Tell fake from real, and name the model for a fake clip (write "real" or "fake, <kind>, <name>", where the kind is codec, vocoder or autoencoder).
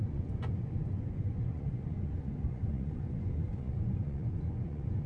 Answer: fake, vocoder, Vocos